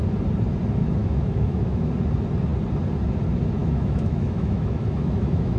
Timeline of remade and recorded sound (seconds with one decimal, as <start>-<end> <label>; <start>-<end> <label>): 0.0-1.0 recorded; 1.0-1.9 remade; 1.9-3.6 recorded; 3.6-5.6 remade